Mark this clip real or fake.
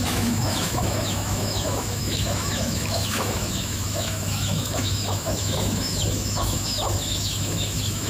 fake